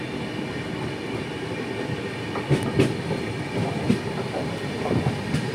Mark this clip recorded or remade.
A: recorded